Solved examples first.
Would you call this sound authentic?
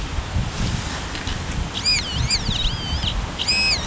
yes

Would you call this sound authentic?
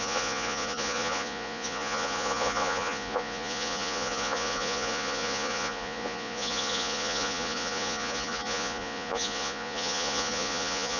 no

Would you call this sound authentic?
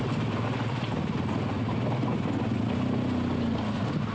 yes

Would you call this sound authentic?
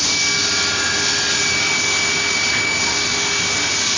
yes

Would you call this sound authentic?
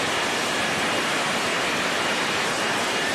yes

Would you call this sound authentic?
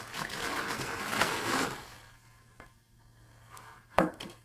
no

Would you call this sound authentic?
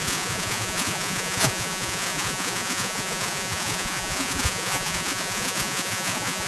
no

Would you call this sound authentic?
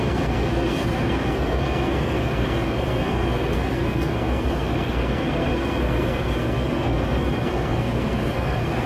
no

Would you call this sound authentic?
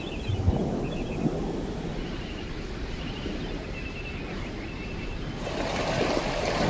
yes